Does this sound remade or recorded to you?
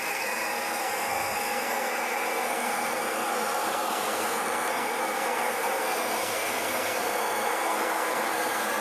remade